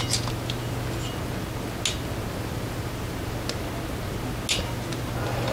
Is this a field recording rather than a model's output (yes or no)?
yes